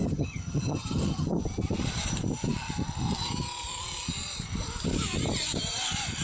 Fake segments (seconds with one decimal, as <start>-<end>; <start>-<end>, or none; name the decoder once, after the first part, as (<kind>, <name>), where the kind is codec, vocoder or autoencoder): 0.0-1.4 (vocoder, HiFi-GAN)